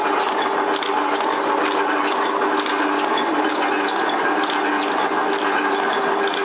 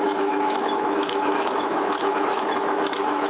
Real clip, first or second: first